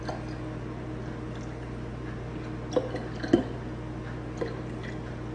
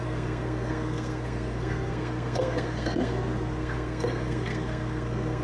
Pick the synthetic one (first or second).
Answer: second